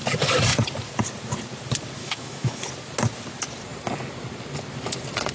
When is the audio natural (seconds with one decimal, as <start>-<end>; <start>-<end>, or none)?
0.0-2.0; 2.6-5.3